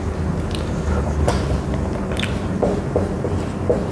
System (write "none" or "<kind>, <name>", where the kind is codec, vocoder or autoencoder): none